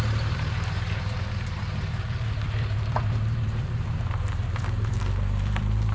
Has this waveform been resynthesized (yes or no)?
yes